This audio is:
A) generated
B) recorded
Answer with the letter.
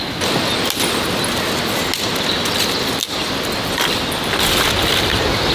B